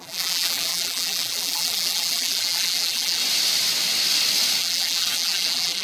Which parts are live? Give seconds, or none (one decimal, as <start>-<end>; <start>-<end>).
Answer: 3.2-4.6

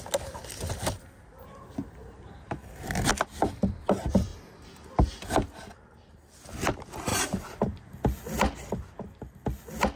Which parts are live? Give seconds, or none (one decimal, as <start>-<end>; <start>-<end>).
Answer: 0.0-2.0; 3.1-7.1; 7.8-10.0

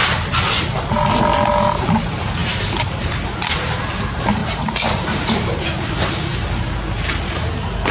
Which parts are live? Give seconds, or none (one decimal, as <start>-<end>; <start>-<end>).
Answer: 0.0-1.5

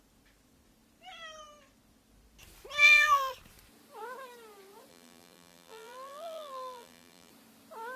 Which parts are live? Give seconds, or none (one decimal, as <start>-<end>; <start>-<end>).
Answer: 0.0-2.8; 3.3-4.9; 7.3-8.0

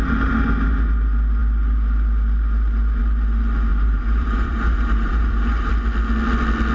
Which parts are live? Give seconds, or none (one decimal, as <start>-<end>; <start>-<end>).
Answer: 0.0-3.7; 5.7-6.7